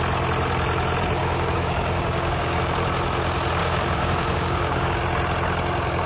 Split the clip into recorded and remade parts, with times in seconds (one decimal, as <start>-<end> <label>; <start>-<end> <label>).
0.0-1.2 recorded; 1.2-2.6 remade; 2.6-3.6 recorded; 3.6-5.0 remade; 5.0-6.1 recorded